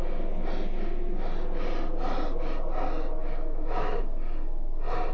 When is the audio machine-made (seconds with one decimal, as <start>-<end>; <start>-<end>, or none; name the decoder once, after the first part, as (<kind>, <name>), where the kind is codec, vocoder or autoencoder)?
3.2-4.0 (autoencoder, DAC-VAE)